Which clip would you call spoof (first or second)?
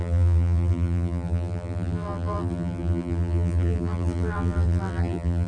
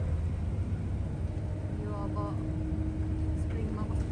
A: first